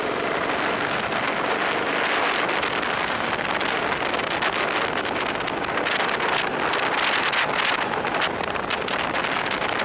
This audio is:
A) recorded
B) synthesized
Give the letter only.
A